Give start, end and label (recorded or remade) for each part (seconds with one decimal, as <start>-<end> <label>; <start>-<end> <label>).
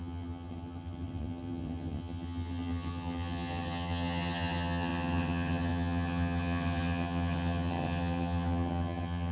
0.0-9.3 remade